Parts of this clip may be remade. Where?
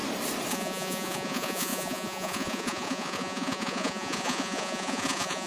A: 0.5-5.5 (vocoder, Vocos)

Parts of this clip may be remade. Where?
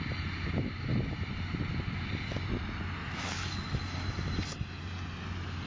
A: 3.0-3.8 (autoencoder, DAC-VAE)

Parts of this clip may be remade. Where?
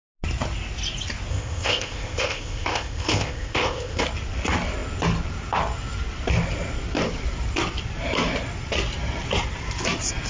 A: 1.3-4.0 (codec, ZipCodec)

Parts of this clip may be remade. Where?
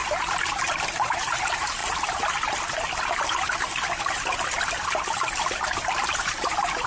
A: 0.0-1.8 (vocoder, BigVGAN v2); 5.9-6.9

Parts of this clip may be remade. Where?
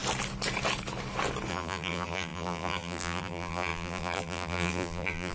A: 1.5-5.3 (vocoder, BigVGAN v2)